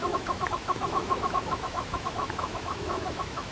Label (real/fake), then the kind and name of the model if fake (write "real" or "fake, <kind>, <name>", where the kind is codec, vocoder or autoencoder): fake, autoencoder, DAC-VAE